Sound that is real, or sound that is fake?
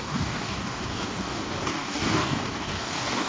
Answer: fake